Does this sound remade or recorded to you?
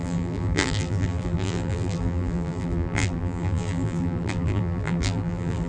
remade